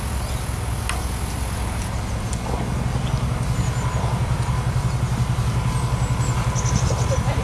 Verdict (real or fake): real